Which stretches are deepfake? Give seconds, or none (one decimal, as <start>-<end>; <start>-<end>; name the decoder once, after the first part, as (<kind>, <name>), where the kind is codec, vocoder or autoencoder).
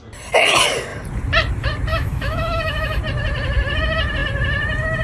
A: 1.9-3.0 (autoencoder, DAC-VAE)